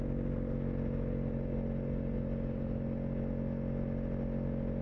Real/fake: real